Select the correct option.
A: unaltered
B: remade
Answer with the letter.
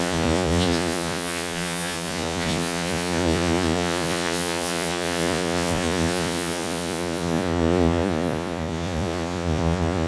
B